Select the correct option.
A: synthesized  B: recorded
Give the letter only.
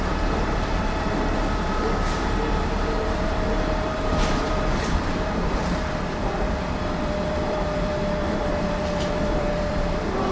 A